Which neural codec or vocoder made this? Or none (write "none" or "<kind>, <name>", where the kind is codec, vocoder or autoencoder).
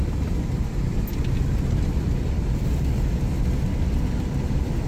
none